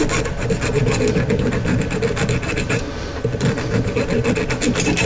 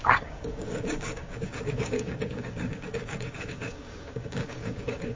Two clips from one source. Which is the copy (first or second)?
second